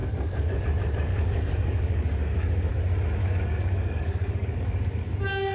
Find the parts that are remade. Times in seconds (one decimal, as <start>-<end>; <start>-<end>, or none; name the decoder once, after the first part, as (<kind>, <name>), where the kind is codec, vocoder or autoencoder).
0.0-0.6 (codec, DAC); 1.1-2.7; 3.2-4.8